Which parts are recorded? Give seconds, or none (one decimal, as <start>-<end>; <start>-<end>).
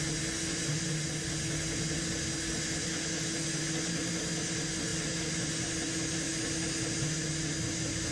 0.0-8.1